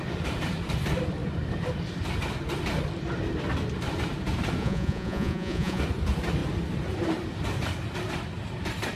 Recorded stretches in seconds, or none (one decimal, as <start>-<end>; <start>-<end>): 0.0-4.6; 5.8-9.0